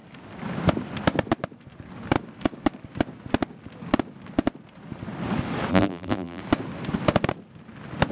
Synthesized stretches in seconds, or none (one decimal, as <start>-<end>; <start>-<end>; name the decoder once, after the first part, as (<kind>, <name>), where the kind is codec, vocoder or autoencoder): 5.7-6.4 (vocoder, BigVGAN v2)